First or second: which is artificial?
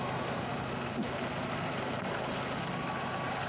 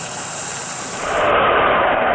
second